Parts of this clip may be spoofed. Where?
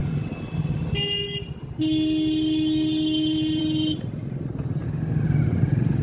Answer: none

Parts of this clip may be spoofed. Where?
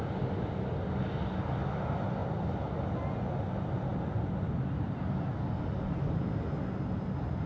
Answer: none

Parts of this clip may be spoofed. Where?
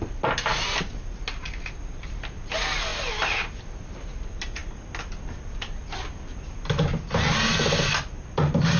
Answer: none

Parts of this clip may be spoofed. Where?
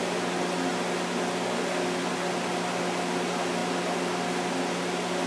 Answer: none